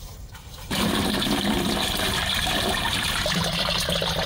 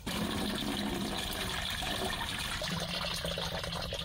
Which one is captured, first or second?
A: second